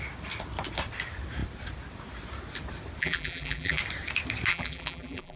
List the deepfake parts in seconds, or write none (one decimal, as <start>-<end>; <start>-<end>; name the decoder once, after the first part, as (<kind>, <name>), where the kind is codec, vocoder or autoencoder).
3.0-3.8 (vocoder, BigVGAN v2); 4.5-5.4